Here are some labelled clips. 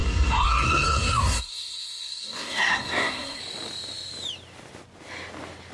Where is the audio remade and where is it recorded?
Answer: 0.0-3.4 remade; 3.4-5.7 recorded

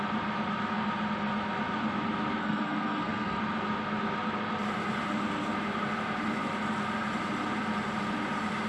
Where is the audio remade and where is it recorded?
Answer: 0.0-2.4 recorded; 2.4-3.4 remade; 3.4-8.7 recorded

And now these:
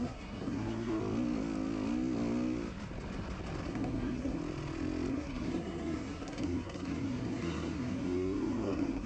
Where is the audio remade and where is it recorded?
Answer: 0.0-1.0 remade; 1.0-3.7 recorded; 3.7-4.4 remade; 4.4-5.1 recorded; 5.1-9.1 remade

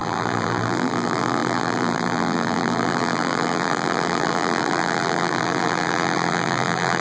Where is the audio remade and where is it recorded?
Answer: 0.0-7.0 remade

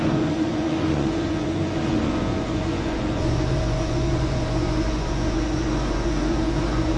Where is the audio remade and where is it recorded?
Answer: 0.0-7.0 remade

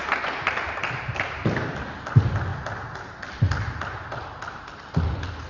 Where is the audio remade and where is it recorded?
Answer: 0.0-5.5 recorded

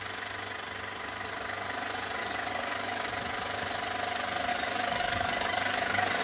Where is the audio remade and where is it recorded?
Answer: 0.0-2.2 recorded; 2.2-3.1 remade; 3.1-4.5 recorded; 4.5-6.2 remade

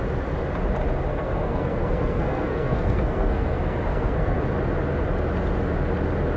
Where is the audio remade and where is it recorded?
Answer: 0.0-1.1 recorded; 1.1-4.4 remade; 4.4-6.4 recorded